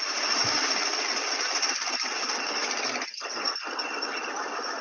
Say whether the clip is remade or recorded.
recorded